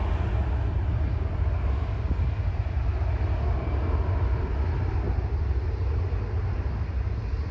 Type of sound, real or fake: real